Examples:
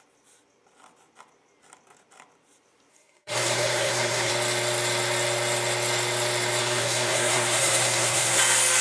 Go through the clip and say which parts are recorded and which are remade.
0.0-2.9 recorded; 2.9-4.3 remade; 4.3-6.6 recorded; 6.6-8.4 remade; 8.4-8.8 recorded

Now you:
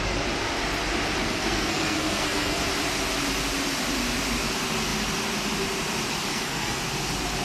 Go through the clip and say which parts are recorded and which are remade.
0.0-1.2 recorded; 1.2-2.6 remade; 2.6-6.3 recorded; 6.3-6.8 remade; 6.8-7.4 recorded

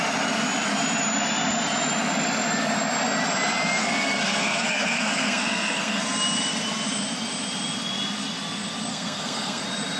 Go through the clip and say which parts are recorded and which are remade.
0.0-3.8 recorded; 3.8-6.0 remade; 6.0-8.9 recorded; 8.9-9.6 remade; 9.6-10.0 recorded

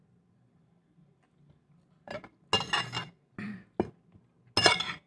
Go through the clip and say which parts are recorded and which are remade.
0.0-5.1 recorded